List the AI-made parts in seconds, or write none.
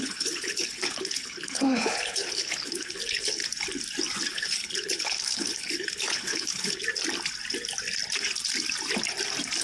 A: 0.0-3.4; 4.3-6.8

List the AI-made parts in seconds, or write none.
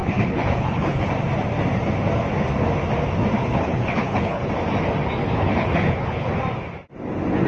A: 0.0-1.1; 3.4-4.5; 5.2-6.4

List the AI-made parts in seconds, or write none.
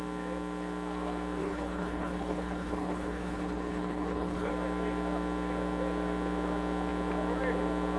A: 1.4-4.5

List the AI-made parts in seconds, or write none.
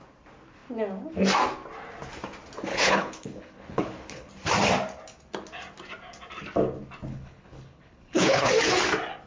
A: 2.7-4.3; 7.1-8.5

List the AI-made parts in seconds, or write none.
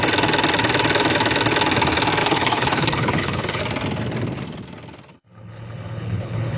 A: 2.2-3.6; 5.1-6.6